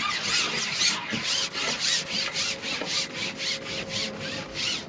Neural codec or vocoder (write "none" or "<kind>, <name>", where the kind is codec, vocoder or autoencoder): none